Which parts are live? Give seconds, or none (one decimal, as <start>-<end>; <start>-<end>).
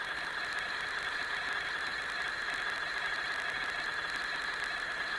0.0-5.2